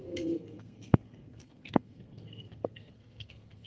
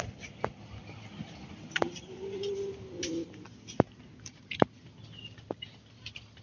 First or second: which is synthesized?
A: first